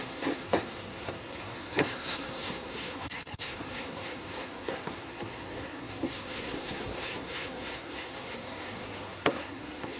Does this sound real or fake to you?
fake